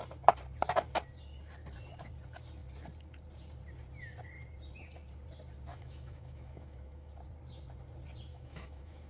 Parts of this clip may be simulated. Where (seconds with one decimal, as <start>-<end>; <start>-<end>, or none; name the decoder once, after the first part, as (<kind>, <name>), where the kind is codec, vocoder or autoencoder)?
5.7-7.1 (autoencoder, DAC-VAE); 8.3-9.1